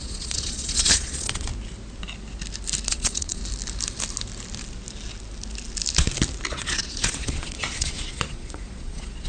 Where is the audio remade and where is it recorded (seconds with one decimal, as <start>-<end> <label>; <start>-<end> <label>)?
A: 0.0-1.5 remade; 1.5-2.9 recorded; 2.9-3.4 remade; 3.4-6.5 recorded; 6.5-9.3 remade